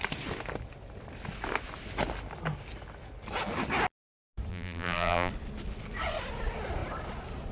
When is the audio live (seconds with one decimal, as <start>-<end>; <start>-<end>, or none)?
0.0-4.5; 5.3-7.5